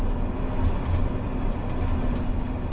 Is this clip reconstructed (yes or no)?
no